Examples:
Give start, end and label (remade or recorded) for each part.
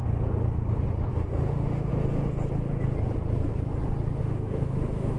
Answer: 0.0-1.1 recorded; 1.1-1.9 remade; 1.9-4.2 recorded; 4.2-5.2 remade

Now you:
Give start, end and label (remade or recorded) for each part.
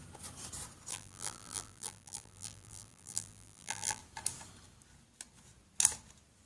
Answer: 0.0-0.9 recorded; 0.9-4.0 remade; 4.0-6.5 recorded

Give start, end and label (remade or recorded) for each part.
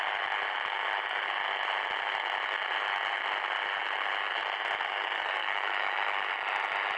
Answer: 0.0-5.4 recorded; 5.4-6.3 remade; 6.3-7.0 recorded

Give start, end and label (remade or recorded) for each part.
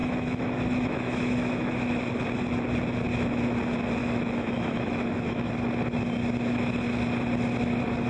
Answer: 0.0-2.0 remade; 2.0-4.0 recorded; 4.0-5.5 remade; 5.5-8.1 recorded